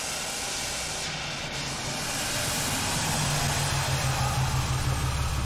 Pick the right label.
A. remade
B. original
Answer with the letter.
B